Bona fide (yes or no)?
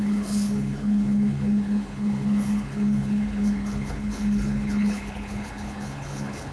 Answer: no